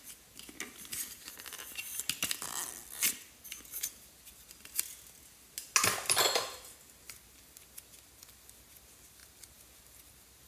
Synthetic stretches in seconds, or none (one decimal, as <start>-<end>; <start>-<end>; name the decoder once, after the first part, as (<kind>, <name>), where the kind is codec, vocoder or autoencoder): none